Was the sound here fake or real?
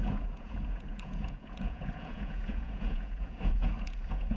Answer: fake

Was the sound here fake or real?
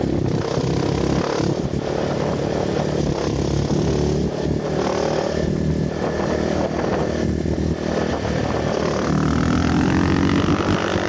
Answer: real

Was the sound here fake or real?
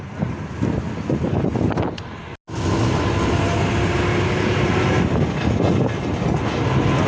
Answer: real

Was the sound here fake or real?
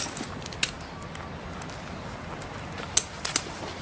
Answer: real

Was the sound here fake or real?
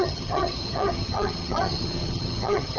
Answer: fake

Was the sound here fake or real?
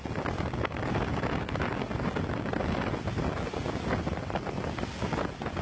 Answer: real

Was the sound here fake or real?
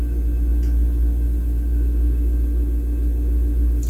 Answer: real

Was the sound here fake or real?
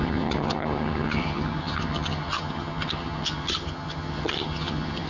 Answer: fake